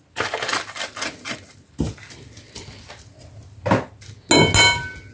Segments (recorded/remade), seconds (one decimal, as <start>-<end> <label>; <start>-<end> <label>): 0.0-5.1 recorded